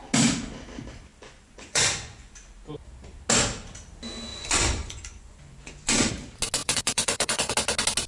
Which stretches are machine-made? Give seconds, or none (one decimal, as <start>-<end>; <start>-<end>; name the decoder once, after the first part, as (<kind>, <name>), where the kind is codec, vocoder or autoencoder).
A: 1.1-2.3 (vocoder, Vocos); 4.3-6.1; 6.6-7.5